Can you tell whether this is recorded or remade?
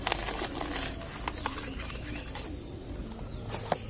recorded